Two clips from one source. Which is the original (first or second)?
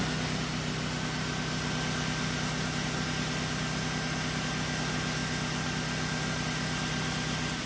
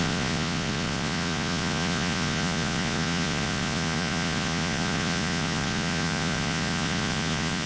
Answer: first